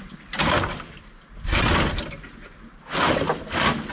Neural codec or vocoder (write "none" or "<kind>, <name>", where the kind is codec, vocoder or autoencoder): none